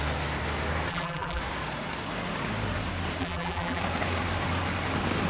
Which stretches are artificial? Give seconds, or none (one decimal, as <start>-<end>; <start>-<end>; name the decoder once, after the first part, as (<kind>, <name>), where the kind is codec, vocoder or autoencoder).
0.9-1.4 (vocoder, BigVGAN v2); 3.2-3.8